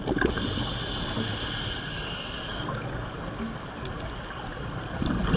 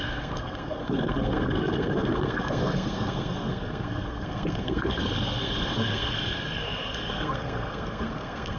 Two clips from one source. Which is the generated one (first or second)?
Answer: second